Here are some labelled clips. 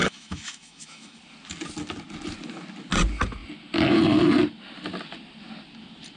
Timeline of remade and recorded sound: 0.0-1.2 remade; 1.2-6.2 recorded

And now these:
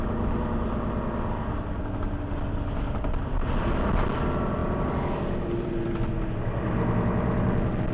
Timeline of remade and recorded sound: 0.0-7.9 recorded

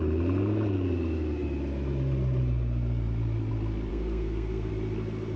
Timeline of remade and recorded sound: 0.0-3.9 recorded; 3.9-4.7 remade; 4.7-5.4 recorded

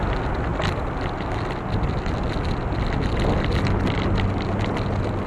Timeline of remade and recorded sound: 0.0-5.3 recorded

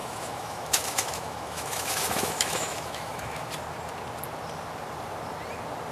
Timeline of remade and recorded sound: 0.0-3.5 remade; 3.5-5.9 recorded